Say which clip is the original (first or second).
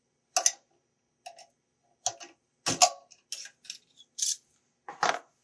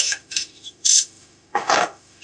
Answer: first